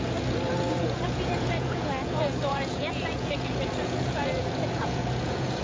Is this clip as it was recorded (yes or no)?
no